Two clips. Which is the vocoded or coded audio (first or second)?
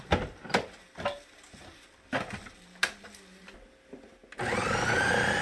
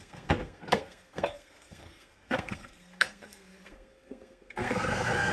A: second